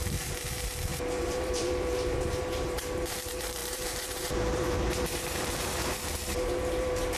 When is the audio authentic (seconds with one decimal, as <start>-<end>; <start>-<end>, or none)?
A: none